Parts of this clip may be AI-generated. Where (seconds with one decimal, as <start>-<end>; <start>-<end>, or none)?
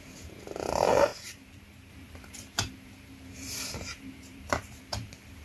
0.0-5.4